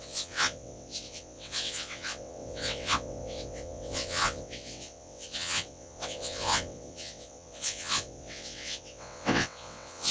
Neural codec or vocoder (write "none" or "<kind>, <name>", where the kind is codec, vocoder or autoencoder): vocoder, WaveNeXt